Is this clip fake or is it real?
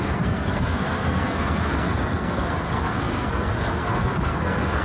fake